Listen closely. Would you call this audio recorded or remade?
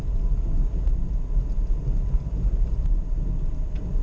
recorded